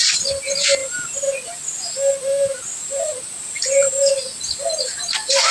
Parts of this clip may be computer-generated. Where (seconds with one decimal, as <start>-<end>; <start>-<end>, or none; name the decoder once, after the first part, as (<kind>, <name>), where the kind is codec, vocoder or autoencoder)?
0.8-4.1 (vocoder, BigVGAN v2)